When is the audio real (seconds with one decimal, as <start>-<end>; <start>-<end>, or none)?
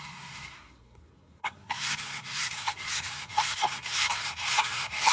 none